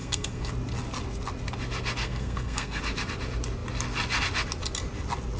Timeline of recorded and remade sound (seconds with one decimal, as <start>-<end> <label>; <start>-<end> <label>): 0.0-0.5 remade; 0.5-2.0 recorded; 2.0-2.8 remade; 2.8-5.4 recorded